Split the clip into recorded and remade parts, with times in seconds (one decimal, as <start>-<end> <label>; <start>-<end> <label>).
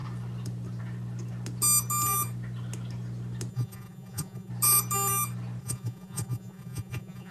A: 0.0-3.5 recorded; 3.5-4.5 remade; 4.5-5.6 recorded; 5.6-7.3 remade